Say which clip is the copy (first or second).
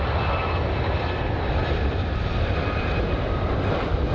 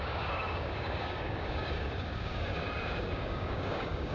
second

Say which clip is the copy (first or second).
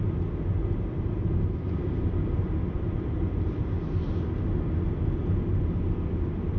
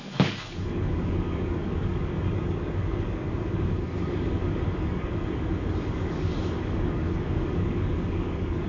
second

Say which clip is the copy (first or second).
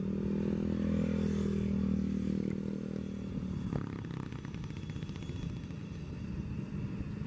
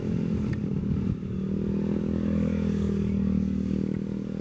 second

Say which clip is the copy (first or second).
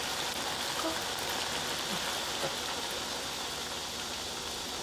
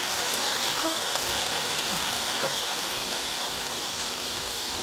second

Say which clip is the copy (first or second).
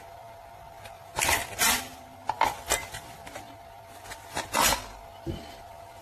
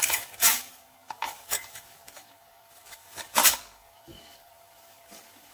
second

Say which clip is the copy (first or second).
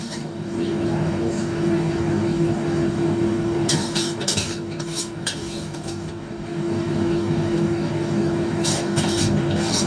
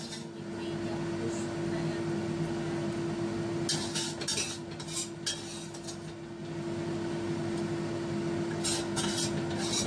first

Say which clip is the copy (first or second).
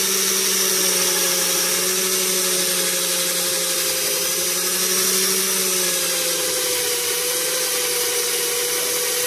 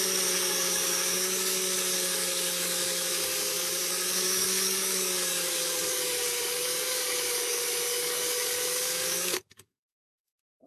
second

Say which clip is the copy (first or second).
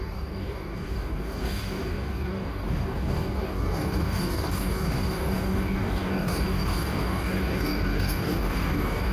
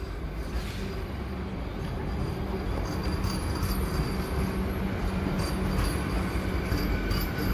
first